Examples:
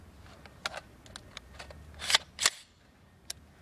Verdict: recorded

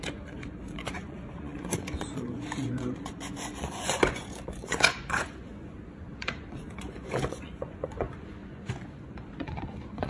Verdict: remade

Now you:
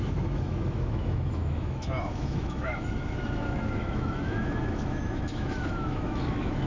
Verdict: remade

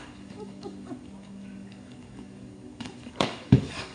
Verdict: remade